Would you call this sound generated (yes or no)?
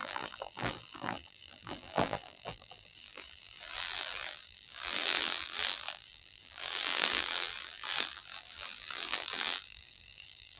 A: yes